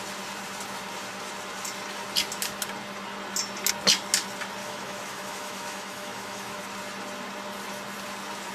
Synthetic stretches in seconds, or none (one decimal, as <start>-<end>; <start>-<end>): 4.6-6.6